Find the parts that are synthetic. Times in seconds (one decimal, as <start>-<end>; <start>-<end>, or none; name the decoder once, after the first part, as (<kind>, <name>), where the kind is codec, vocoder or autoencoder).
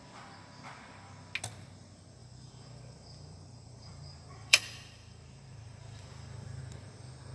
2.2-6.6 (vocoder, BigVGAN v2)